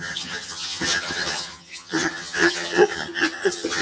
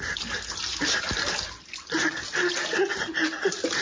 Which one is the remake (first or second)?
first